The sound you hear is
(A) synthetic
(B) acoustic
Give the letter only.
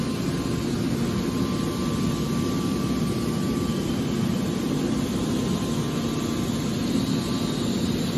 B